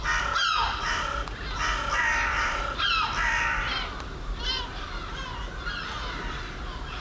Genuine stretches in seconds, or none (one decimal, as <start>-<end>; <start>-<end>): 0.0-0.6; 4.8-7.0